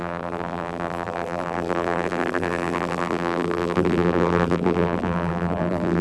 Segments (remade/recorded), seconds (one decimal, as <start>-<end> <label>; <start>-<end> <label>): 0.0-6.0 remade